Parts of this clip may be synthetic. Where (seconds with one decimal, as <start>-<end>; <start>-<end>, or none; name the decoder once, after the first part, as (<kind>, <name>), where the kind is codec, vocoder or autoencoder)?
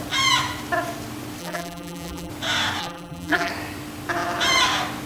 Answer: 1.4-2.3 (vocoder, BigVGAN v2); 2.8-3.5